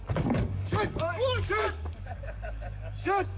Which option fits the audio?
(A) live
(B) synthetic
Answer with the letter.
B